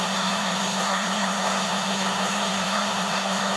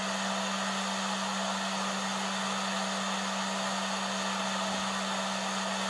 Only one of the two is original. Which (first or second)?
second